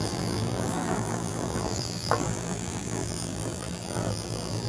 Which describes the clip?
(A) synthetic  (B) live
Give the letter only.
A